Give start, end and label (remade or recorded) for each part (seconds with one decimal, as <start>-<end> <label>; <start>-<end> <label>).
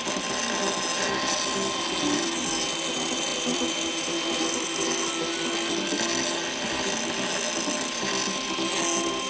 0.0-3.3 recorded; 3.3-4.9 remade; 4.9-9.3 recorded